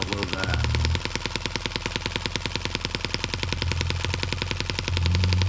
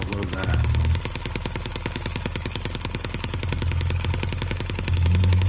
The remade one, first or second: second